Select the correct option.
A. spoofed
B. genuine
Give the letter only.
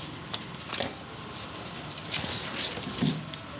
B